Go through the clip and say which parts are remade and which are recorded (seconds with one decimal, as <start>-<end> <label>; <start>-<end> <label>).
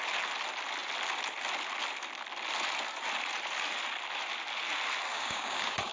0.0-5.1 recorded; 5.1-5.9 remade